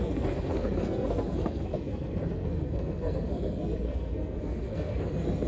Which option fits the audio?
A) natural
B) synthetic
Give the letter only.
B